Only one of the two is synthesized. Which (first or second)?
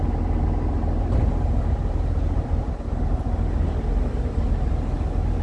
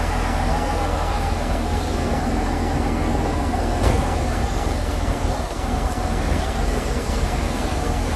second